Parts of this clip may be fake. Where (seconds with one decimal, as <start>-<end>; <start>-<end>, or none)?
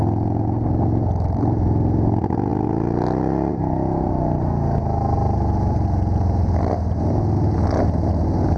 none